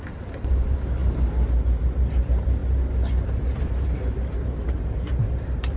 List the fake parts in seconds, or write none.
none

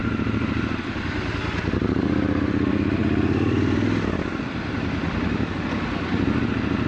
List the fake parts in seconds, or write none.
0.0-6.9 (vocoder, BigVGAN v2)

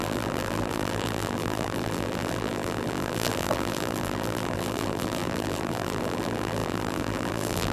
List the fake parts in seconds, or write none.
0.0-7.7 (vocoder, BigVGAN v2)

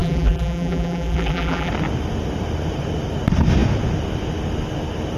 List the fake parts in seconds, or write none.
0.0-1.7 (vocoder, BigVGAN v2)

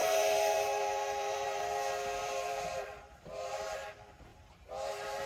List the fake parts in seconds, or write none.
0.0-1.6 (vocoder, BigVGAN v2); 2.2-3.9; 4.3-5.3